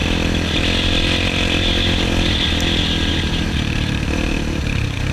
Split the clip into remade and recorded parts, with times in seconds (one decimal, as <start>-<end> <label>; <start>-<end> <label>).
0.0-3.1 recorded; 3.1-5.1 remade